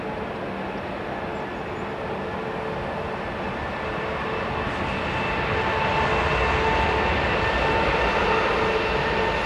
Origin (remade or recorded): recorded